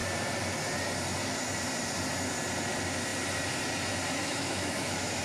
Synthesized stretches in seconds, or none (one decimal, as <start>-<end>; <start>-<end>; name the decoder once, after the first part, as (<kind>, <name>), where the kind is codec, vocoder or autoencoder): 4.2-5.2 (autoencoder, DAC-VAE)